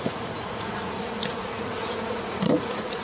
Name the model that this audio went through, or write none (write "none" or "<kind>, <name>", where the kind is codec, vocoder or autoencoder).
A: vocoder, Vocos